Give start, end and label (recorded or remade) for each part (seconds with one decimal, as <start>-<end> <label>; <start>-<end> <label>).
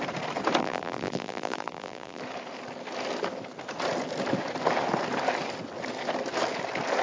0.0-0.6 recorded; 0.6-2.2 remade; 2.2-7.0 recorded